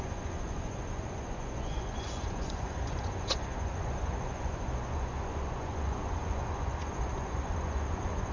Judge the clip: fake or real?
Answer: fake